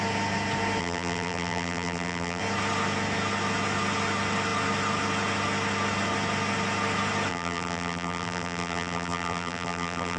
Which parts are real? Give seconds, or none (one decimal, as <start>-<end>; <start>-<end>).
0.0-0.8; 2.4-7.3